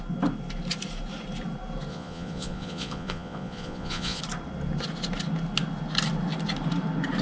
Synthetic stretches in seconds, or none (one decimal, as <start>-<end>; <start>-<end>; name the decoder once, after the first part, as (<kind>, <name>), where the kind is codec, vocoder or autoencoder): 1.9-4.2 (vocoder, Vocos)